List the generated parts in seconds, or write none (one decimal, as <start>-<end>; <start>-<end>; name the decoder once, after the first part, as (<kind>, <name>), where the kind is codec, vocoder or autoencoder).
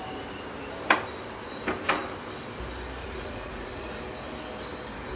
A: 3.0-4.0 (vocoder, Vocos)